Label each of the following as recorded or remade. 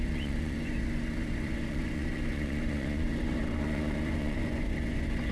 remade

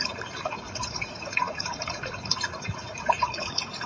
remade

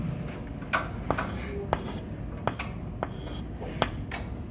recorded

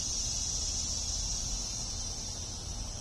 recorded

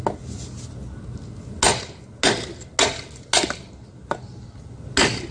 recorded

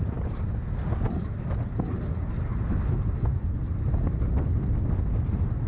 recorded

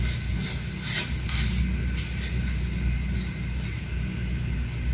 recorded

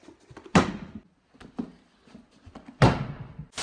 recorded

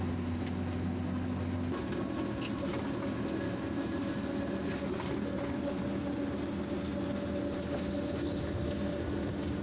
recorded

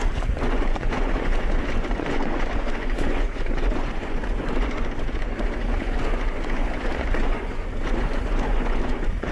remade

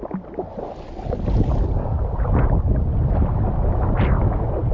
recorded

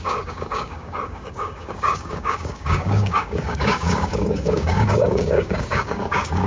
remade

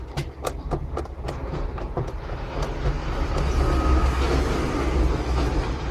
recorded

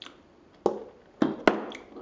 recorded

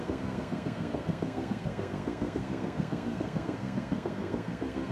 remade